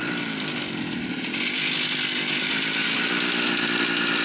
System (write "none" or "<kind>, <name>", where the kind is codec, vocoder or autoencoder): none